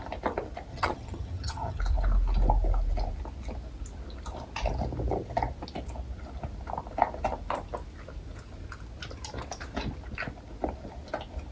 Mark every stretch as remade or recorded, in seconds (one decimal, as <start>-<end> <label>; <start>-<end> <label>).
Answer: 0.0-0.7 recorded; 0.7-1.8 remade; 1.8-11.5 recorded